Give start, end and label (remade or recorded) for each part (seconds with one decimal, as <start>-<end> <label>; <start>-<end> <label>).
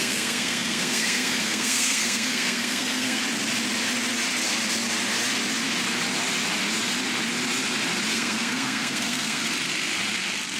0.0-3.2 remade; 3.2-8.1 recorded; 8.1-9.4 remade; 9.4-10.6 recorded